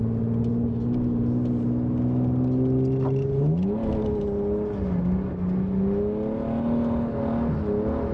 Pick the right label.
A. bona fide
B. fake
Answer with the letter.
A